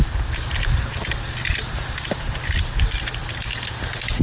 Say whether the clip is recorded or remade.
recorded